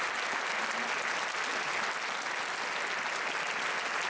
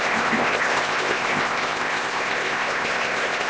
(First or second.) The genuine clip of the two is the first